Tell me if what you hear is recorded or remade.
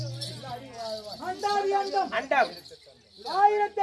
recorded